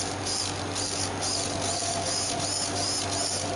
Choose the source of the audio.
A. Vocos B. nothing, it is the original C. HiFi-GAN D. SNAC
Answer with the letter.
B